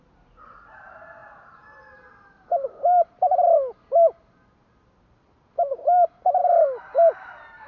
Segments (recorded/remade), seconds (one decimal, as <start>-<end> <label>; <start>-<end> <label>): 0.0-7.7 recorded